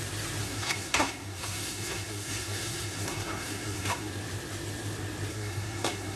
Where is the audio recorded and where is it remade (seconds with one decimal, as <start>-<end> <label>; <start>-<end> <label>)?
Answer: 0.0-0.4 recorded; 0.4-4.1 remade; 4.1-5.3 recorded; 5.3-6.2 remade